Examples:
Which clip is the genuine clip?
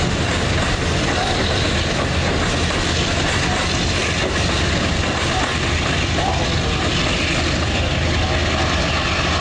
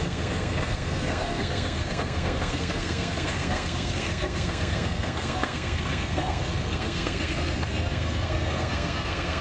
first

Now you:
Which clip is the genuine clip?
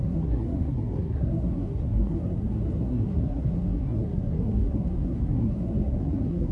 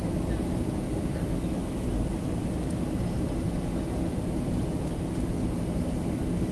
second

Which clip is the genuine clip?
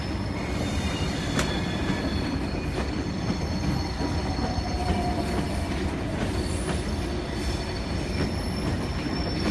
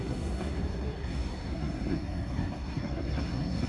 first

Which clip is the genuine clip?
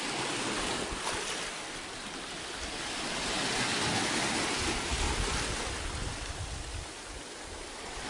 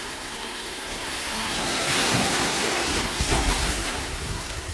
first